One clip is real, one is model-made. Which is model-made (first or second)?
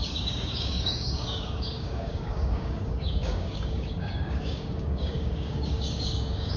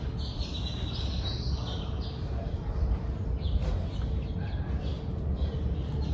first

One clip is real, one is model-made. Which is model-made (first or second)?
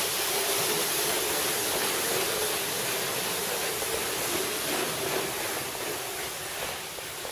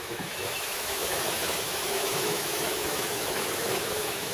second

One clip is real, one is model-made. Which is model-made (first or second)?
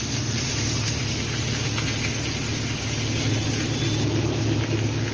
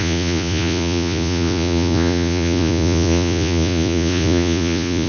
second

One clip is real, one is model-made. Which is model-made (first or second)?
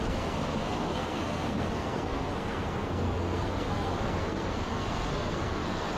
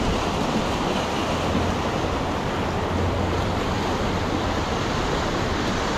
first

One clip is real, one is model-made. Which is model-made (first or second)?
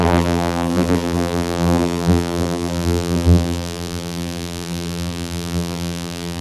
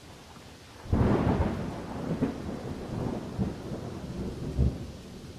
first